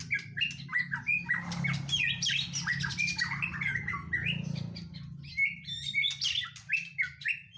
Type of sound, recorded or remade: recorded